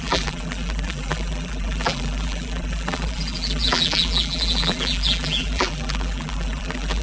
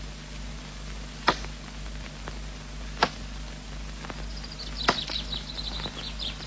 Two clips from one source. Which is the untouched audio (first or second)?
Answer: second